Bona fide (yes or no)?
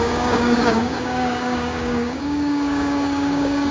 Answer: no